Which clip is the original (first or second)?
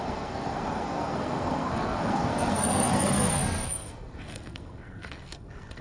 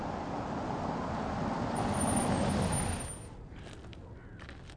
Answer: second